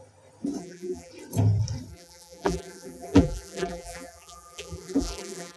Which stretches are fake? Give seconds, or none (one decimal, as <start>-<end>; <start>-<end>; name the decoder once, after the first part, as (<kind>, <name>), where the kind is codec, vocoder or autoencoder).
0.6-1.1 (vocoder, BigVGAN v2); 1.9-5.6